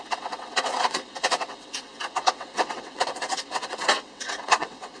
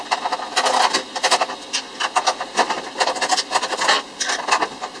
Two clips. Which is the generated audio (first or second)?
first